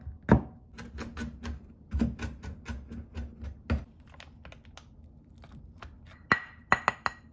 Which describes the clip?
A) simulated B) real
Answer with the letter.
B